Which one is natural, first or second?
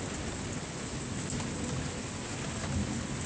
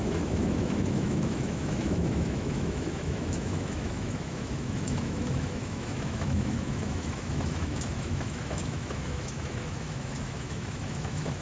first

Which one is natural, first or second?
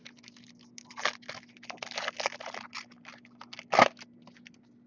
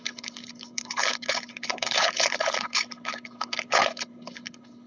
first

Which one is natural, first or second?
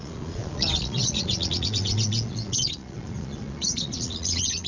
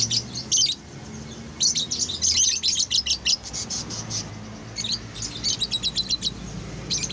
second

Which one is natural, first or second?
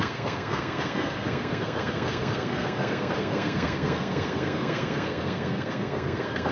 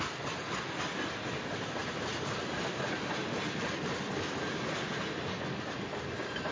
second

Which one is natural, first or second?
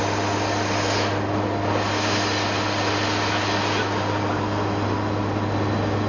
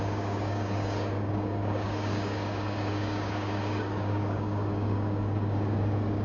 first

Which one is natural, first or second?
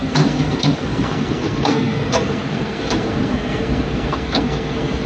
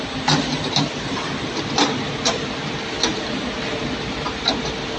second